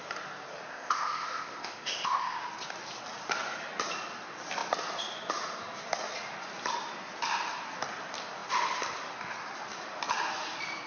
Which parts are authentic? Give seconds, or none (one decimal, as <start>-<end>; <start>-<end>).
0.0-0.7; 2.4-10.9